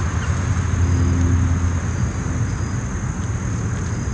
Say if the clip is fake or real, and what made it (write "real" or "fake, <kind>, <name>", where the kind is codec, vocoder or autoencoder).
real